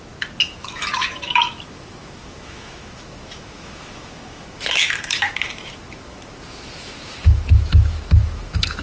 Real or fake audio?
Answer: fake